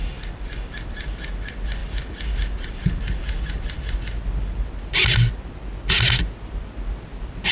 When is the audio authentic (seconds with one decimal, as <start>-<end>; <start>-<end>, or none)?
0.0-7.5